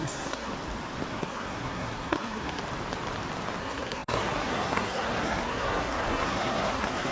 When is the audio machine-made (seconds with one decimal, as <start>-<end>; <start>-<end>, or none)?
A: 0.0-0.5; 1.1-2.6; 3.6-7.1